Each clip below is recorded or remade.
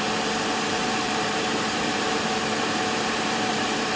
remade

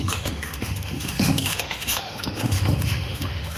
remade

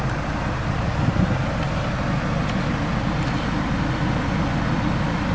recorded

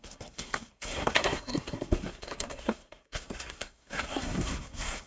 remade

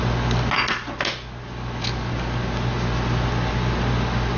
recorded